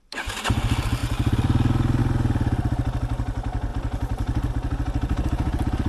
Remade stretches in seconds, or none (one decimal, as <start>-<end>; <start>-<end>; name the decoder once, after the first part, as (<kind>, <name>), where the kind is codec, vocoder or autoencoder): 1.0-2.0 (vocoder, BigVGAN v2)

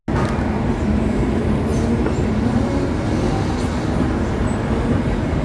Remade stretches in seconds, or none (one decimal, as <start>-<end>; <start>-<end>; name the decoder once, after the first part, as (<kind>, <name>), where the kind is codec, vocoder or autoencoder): none

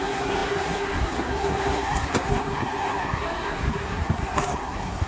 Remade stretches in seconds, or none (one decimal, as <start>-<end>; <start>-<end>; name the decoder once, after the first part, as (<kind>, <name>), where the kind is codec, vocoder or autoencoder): 0.0-5.1 (codec, SNAC)

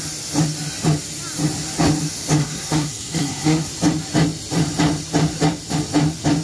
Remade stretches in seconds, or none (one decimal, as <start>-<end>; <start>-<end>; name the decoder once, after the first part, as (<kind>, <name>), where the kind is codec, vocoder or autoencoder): 2.4-3.7 (codec, SNAC)

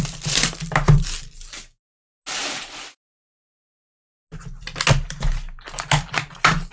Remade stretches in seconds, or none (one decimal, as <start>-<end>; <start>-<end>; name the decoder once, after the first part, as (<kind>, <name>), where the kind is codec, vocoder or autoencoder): none

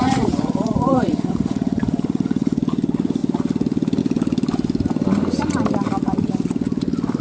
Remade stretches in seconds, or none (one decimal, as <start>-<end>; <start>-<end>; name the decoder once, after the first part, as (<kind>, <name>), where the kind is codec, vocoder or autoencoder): 0.0-2.6 (vocoder, Vocos)

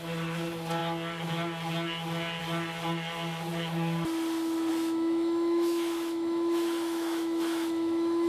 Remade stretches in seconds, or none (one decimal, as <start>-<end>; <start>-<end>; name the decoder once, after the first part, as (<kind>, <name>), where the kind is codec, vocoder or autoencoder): 4.7-8.3 (autoencoder, DAC-VAE)